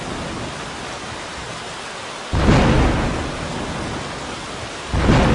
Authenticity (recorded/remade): recorded